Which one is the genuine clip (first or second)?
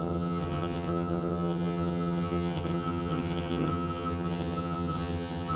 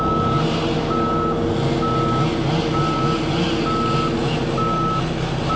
second